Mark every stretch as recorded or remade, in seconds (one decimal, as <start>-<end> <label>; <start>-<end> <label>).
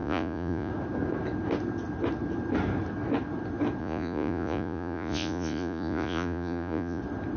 0.0-0.7 remade; 0.7-3.8 recorded; 3.8-7.0 remade; 7.0-7.4 recorded